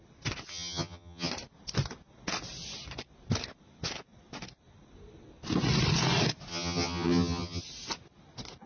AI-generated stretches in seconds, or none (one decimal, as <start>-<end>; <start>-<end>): 0.5-1.3; 6.5-7.6